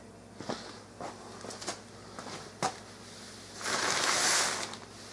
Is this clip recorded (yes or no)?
yes